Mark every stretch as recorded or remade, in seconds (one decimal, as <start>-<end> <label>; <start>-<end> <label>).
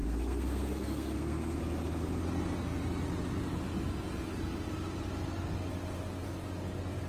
0.0-1.6 remade; 1.6-7.1 recorded